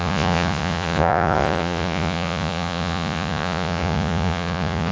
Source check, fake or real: fake